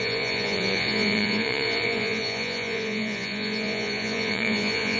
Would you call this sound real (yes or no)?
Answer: no